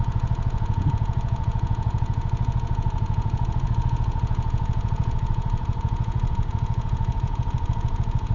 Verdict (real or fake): fake